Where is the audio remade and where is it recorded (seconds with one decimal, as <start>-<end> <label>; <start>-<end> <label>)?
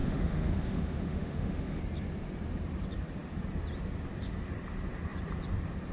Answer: 0.0-1.8 remade; 1.8-5.9 recorded